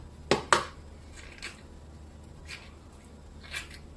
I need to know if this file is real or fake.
real